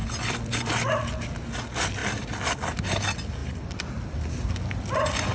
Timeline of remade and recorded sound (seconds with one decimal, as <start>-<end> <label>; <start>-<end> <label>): 0.0-0.9 remade; 0.9-3.4 recorded; 3.4-3.9 remade; 3.9-5.3 recorded